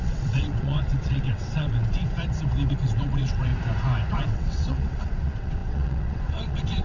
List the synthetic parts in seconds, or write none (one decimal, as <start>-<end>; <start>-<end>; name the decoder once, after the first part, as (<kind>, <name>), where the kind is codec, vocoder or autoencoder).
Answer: 0.0-2.0 (vocoder, WaveNeXt); 2.7-3.5; 4.1-6.8